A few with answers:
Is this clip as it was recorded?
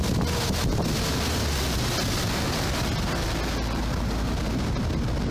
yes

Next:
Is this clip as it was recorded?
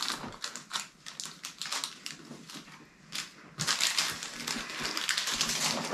yes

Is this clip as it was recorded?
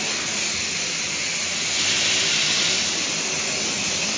yes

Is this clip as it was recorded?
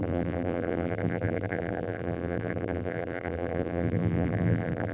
no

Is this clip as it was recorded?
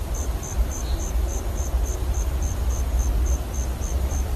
no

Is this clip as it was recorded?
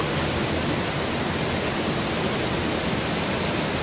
yes